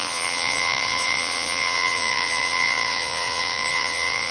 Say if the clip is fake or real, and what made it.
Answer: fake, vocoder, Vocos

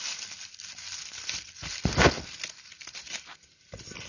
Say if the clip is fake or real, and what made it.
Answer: real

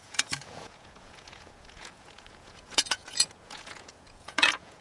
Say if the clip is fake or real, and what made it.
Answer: fake, vocoder, Vocos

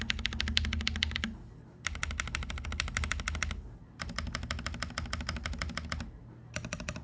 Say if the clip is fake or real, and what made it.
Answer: real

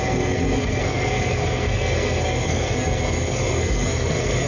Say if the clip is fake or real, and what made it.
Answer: fake, codec, SNAC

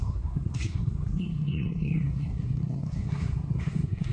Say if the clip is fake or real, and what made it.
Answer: fake, codec, SNAC